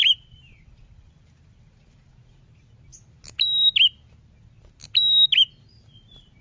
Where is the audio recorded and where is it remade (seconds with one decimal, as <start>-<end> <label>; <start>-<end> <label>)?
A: 0.0-2.3 remade; 2.3-6.4 recorded